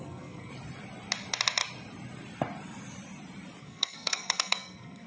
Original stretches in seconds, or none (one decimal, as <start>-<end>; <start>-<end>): 0.5-3.6